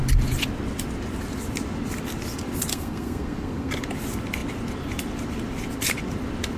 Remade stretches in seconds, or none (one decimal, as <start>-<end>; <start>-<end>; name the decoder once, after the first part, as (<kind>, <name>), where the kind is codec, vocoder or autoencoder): 2.7-3.7 (codec, SNAC)